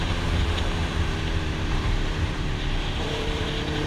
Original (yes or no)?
no